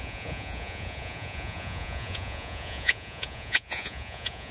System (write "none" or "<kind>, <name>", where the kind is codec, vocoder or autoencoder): vocoder, Vocos